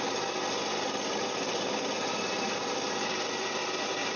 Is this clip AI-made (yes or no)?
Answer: no